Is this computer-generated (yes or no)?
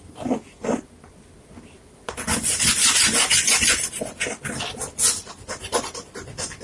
no